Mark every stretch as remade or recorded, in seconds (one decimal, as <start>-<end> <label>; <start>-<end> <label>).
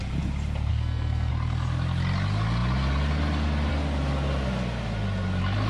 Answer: 0.0-0.7 recorded; 0.7-1.3 remade; 1.3-5.7 recorded